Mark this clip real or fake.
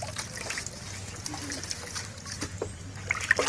real